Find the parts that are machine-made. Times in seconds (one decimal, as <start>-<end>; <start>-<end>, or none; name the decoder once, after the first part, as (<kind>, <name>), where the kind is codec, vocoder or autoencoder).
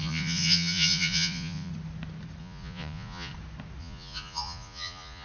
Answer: 0.0-1.7 (vocoder, Vocos); 2.4-3.3; 3.8-5.2